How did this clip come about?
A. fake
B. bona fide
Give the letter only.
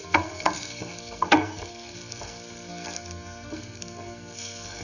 A